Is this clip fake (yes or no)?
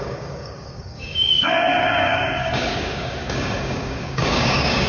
yes